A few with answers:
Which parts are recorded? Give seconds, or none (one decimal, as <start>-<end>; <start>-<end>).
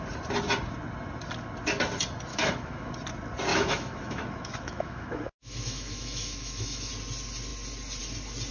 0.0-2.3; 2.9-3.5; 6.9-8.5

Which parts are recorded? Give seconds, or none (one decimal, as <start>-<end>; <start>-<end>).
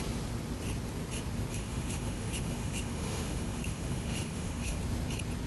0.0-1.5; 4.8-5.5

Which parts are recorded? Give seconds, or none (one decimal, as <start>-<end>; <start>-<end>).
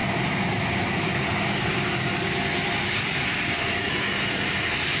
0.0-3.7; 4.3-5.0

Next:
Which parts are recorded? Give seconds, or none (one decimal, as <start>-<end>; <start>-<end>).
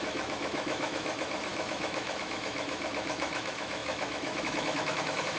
none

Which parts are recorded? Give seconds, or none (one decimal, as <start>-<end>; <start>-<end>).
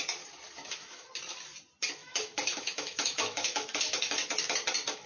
0.0-0.6; 1.1-2.0; 4.1-5.1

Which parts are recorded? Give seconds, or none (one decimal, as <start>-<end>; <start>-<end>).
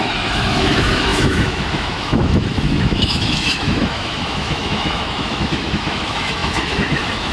none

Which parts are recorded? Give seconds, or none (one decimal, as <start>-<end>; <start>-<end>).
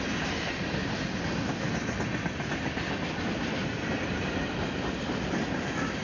0.0-6.0